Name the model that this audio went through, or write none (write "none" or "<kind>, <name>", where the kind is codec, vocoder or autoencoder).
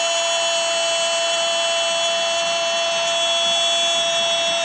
none